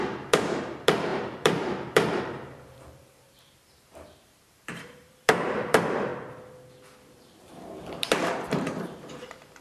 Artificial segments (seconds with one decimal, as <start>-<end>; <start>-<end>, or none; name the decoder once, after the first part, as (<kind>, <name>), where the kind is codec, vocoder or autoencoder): 0.0-6.1 (vocoder, BigVGAN v2); 7.0-9.6